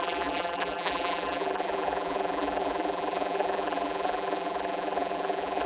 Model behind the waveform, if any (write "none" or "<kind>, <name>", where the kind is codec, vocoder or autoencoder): vocoder, BigVGAN v2